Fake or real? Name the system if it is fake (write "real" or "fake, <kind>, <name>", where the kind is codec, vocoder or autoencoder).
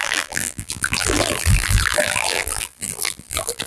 fake, vocoder, BigVGAN v2